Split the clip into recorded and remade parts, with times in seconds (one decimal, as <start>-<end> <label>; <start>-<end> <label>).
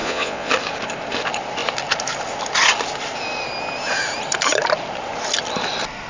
0.0-0.5 remade; 0.5-6.1 recorded